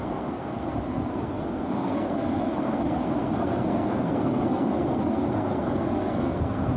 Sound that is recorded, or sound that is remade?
remade